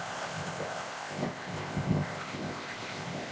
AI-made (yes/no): yes